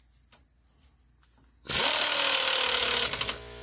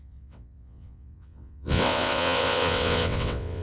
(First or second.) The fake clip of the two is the second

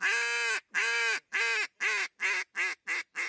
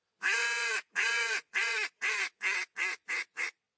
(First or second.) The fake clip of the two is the second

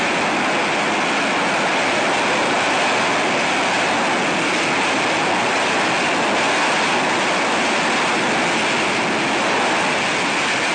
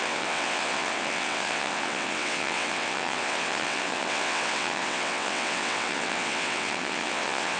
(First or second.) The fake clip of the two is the second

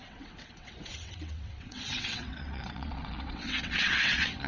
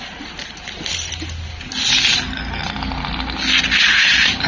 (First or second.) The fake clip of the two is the first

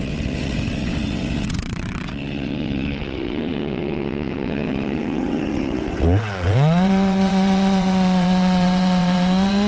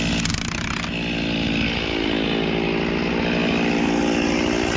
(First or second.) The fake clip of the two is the first